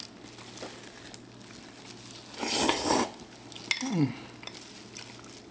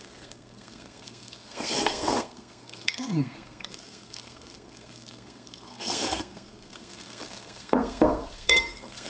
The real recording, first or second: first